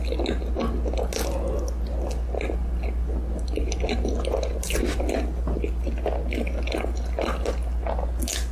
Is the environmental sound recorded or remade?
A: recorded